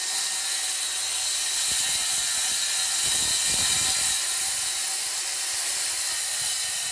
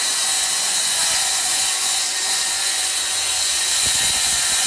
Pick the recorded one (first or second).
first